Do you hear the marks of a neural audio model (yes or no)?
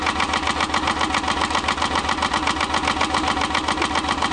no